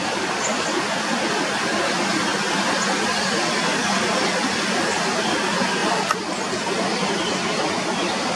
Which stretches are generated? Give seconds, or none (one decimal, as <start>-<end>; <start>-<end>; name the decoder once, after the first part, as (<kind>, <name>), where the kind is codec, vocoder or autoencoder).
none